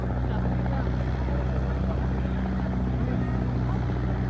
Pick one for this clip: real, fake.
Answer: real